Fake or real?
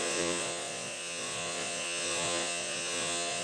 fake